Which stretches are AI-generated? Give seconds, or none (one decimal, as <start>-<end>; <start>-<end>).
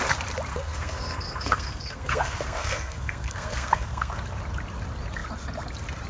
0.5-4.2